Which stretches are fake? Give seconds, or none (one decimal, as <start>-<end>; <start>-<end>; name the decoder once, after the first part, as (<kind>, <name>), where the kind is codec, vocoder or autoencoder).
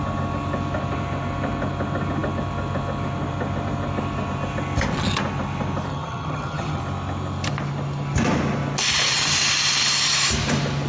5.9-6.8 (vocoder, HiFi-GAN)